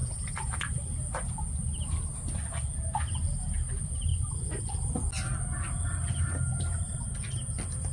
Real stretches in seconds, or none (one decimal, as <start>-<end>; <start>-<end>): 0.0-4.1; 4.6-7.9